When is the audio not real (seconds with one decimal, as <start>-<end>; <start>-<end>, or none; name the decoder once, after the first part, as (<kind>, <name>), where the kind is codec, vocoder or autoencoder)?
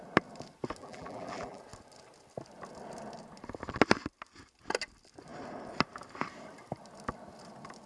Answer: 0.8-1.6 (vocoder, BigVGAN v2)